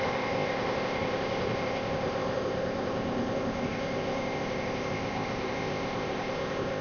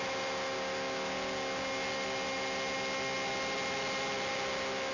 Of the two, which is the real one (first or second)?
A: second